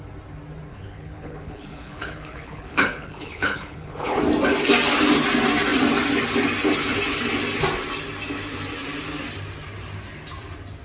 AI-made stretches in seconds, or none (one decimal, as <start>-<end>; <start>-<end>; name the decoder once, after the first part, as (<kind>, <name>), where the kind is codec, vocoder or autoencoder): 0.7-4.2 (codec, HILCodec)